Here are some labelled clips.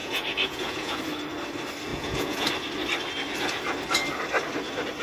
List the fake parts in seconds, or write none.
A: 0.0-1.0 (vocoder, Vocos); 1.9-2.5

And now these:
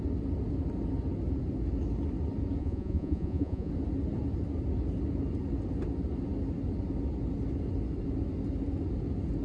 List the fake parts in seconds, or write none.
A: 2.6-3.7 (vocoder, Vocos)

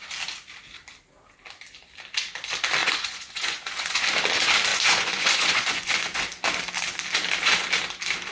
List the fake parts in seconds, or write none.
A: 2.8-4.0 (vocoder, Vocos); 4.7-6.2